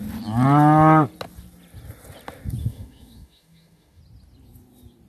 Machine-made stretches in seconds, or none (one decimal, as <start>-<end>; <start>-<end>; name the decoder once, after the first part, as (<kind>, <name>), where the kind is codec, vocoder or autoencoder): 2.6-4.0 (autoencoder, DAC-VAE)

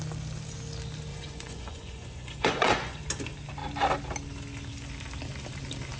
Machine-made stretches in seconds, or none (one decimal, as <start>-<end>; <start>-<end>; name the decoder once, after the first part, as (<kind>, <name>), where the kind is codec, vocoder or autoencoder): 1.1-3.0 (vocoder, Vocos)

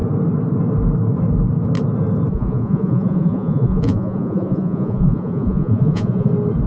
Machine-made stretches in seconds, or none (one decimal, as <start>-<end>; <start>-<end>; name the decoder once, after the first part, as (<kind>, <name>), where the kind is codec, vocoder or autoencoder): 2.3-6.3 (vocoder, Vocos)

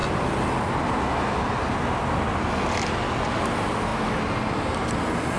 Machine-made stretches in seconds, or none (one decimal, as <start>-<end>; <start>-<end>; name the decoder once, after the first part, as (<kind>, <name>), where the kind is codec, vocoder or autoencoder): 3.2-3.9 (vocoder, BigVGAN v2)

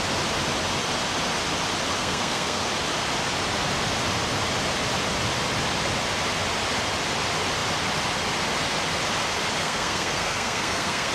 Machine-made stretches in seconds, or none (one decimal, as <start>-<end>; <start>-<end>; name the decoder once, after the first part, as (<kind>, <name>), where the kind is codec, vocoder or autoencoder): 2.0-2.6 (codec, SNAC); 9.6-11.1

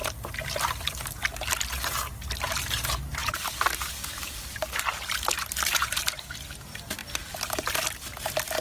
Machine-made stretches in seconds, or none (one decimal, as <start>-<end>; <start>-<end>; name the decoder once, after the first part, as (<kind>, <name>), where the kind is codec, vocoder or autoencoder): 3.2-6.3 (vocoder, BigVGAN v2)

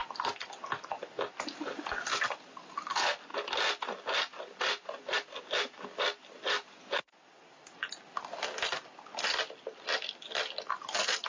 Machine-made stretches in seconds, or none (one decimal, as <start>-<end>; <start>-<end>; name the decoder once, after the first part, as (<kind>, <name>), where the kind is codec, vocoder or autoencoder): none